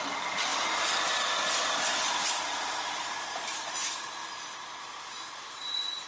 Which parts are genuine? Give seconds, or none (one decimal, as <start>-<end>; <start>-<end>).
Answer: 0.0-6.1